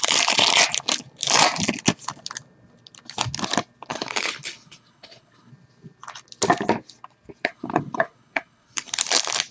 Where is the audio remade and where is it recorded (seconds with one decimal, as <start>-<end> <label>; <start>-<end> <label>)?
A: 0.0-3.9 recorded; 3.9-5.5 remade; 5.5-7.5 recorded; 7.5-9.0 remade; 9.0-9.5 recorded